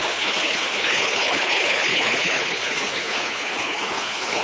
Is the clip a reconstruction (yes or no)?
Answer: yes